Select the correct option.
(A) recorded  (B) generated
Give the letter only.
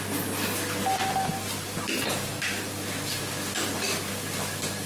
A